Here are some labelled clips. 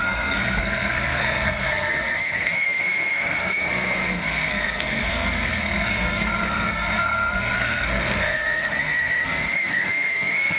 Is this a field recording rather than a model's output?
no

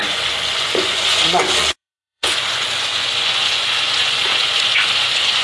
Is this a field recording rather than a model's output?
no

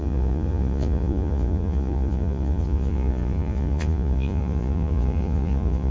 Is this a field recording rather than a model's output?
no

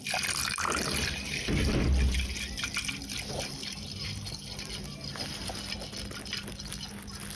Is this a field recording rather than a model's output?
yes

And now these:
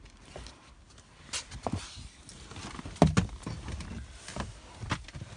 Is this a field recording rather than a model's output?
yes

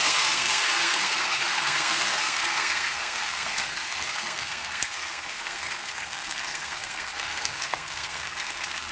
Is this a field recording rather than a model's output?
no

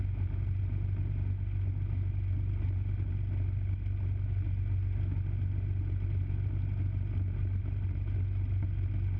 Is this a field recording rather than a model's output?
yes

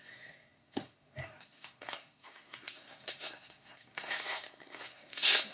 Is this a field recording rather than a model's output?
no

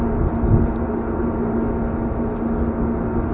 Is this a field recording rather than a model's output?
yes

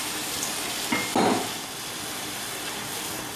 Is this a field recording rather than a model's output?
yes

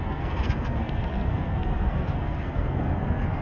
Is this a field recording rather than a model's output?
no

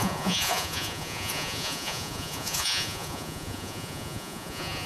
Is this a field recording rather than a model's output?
no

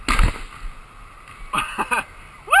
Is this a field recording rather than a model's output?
yes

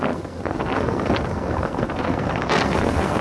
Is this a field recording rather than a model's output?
no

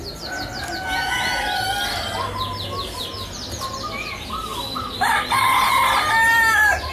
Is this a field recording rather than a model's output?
yes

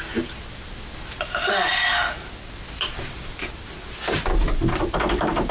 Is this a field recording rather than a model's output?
yes